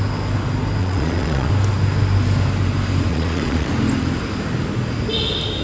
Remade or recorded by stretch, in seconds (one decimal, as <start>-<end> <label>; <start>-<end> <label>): 0.0-0.8 recorded; 0.8-1.5 remade; 1.5-3.1 recorded; 3.1-3.7 remade; 3.7-5.6 recorded